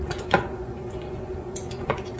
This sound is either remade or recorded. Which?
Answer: remade